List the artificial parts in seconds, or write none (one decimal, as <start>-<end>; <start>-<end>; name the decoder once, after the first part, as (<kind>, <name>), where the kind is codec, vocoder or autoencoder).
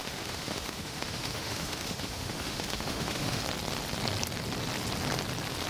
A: 0.0-3.4 (autoencoder, DAC-VAE)